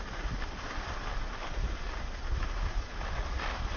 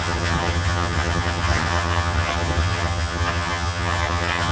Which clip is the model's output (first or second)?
second